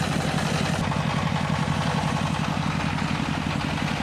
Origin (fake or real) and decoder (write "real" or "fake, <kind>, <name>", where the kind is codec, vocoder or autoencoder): real